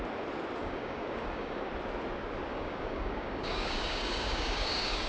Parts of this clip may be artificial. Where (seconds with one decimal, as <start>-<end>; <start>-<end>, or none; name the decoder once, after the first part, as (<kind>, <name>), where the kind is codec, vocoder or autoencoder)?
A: 0.6-1.7 (codec, DAC); 2.5-5.1